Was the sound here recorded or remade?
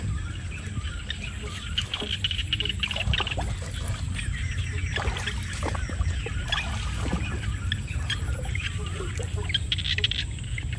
recorded